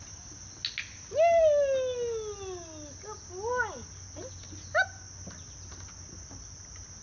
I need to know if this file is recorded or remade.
recorded